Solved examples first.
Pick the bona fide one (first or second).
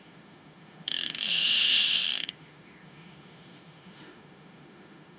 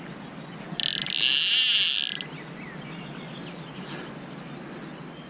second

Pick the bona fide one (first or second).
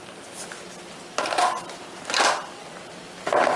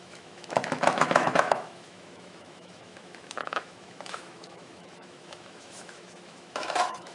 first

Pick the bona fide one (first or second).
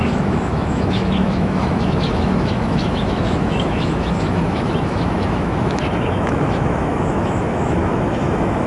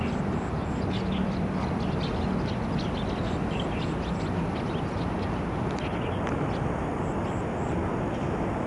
second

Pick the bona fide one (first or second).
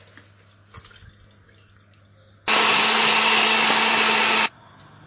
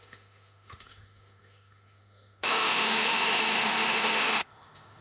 first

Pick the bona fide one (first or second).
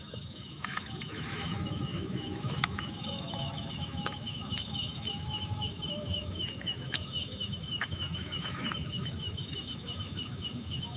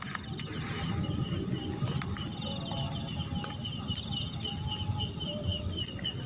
second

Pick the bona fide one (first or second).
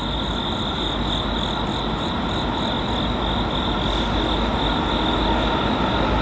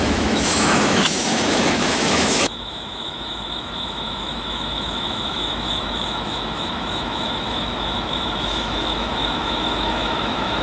first